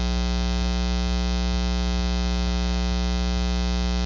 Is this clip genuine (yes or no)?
yes